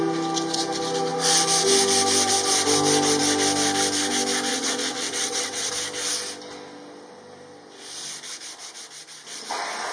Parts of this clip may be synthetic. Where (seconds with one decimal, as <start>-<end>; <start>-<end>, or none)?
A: 4.5-5.7